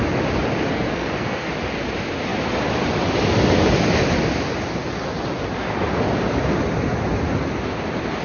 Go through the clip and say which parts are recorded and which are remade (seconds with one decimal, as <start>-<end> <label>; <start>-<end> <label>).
0.0-0.7 recorded; 0.7-1.5 remade; 1.5-8.2 recorded